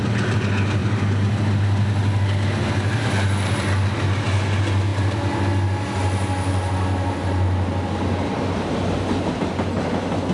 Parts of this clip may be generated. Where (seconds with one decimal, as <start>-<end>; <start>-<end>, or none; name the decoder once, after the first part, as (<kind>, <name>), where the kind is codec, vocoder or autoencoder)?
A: none